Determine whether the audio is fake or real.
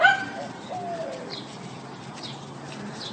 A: real